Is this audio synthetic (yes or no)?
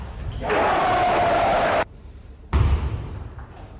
no